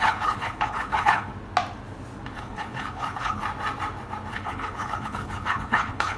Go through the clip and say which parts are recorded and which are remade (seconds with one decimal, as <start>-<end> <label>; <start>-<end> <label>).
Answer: 0.0-1.3 remade; 1.3-2.3 recorded; 2.3-3.4 remade; 3.4-4.3 recorded; 4.3-6.2 remade